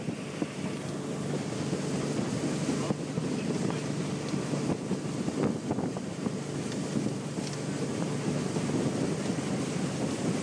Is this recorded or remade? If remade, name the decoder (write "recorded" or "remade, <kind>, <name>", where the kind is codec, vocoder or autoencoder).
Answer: recorded